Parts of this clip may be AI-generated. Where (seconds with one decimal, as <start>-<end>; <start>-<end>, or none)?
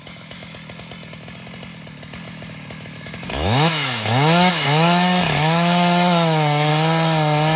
0.0-0.6; 2.5-6.7